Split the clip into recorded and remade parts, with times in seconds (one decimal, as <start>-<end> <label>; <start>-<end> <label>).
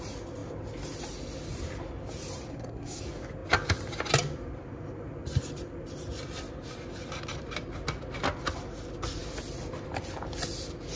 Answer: 0.0-2.5 recorded; 2.5-3.0 remade; 3.0-11.0 recorded